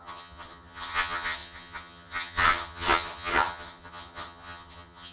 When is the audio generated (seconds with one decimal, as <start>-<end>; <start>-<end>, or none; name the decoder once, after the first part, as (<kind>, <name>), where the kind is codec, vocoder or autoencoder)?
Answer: 0.0-5.1 (vocoder, HiFi-GAN)